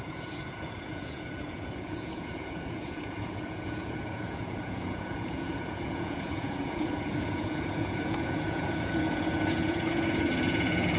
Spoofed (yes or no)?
yes